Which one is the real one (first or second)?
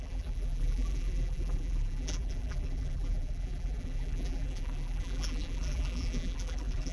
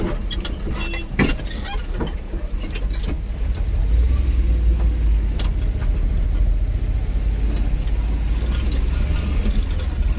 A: second